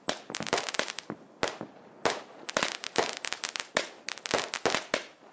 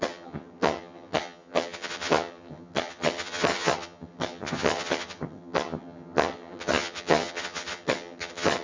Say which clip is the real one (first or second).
first